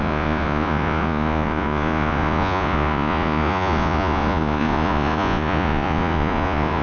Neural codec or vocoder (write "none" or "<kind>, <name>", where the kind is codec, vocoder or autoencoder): vocoder, Vocos